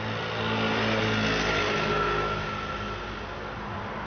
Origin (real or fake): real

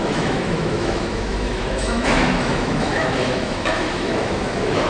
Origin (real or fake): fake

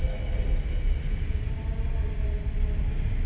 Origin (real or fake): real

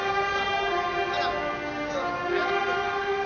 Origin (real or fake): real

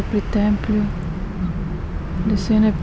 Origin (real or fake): real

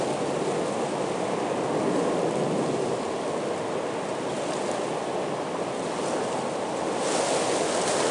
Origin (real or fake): real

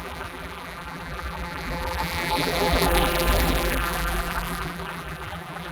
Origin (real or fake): fake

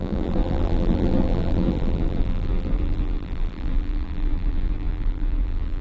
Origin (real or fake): fake